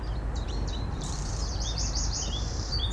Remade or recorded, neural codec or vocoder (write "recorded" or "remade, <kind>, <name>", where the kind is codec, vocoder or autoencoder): remade, vocoder, BigVGAN v2